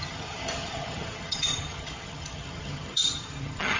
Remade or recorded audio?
remade